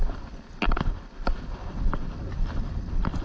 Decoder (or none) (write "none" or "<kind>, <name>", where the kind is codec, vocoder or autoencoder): none